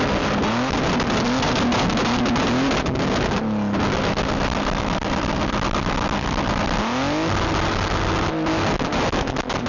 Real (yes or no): yes